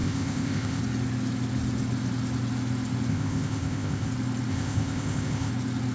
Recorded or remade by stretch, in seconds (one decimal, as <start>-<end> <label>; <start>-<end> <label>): 0.0-0.8 remade; 0.8-3.1 recorded; 3.1-4.1 remade; 4.1-4.5 recorded; 4.5-5.5 remade; 5.5-5.9 recorded